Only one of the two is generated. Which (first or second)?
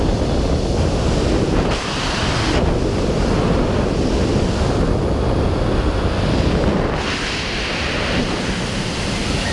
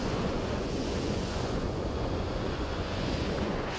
second